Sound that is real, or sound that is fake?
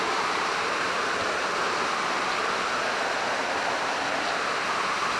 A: real